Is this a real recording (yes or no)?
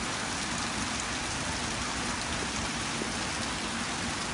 yes